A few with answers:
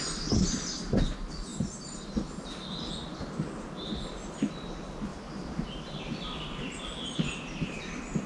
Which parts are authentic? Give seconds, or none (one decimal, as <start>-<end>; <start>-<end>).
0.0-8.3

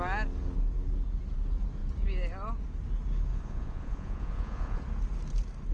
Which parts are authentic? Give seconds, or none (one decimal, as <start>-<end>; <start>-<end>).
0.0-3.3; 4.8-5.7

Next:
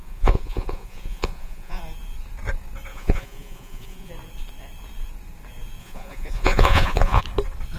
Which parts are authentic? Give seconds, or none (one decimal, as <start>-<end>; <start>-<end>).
1.8-2.9; 4.1-5.8; 7.2-7.8

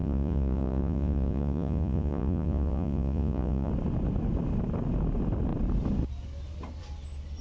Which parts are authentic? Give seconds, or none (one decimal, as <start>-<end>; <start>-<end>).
3.7-7.4